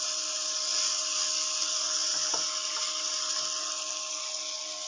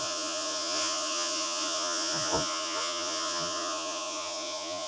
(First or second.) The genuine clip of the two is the first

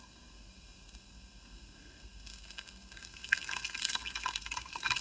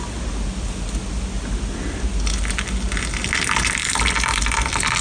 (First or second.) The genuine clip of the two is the second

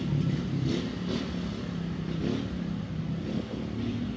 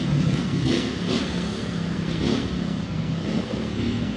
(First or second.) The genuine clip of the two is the first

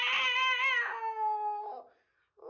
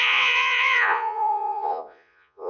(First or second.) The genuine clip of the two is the first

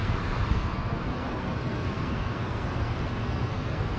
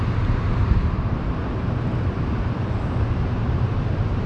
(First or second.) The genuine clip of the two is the second